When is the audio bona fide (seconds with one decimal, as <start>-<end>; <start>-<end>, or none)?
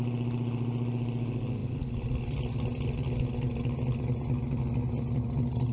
0.0-5.7